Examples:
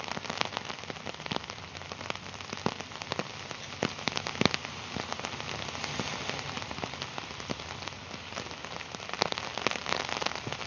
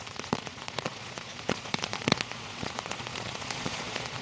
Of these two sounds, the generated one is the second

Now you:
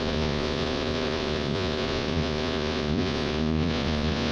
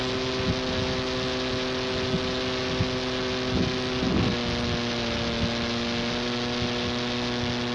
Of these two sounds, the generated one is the first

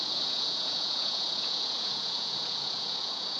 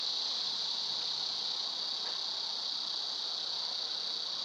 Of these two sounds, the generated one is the first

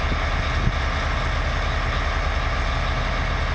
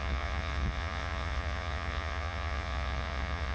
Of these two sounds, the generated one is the second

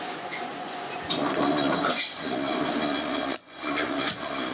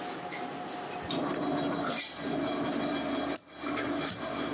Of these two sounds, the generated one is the first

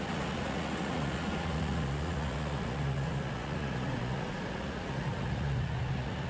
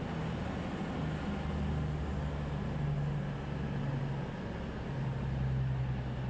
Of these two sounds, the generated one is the first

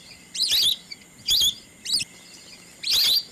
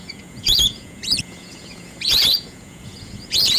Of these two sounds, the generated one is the second